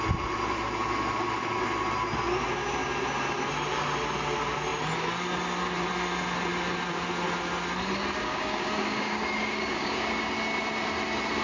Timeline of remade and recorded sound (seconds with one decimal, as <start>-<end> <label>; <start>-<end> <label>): 0.0-8.2 recorded; 8.2-10.2 remade; 10.2-11.4 recorded